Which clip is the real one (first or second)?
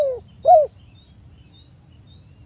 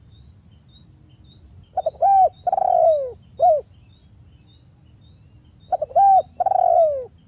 second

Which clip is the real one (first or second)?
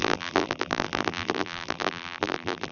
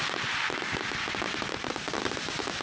second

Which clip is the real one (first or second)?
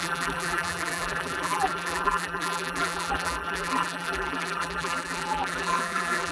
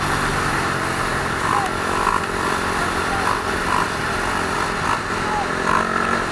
second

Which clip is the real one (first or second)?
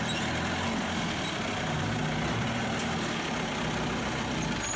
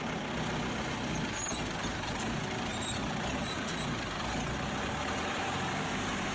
first